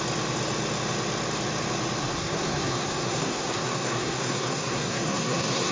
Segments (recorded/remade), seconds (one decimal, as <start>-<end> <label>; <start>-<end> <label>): 0.0-2.0 recorded; 2.0-5.7 remade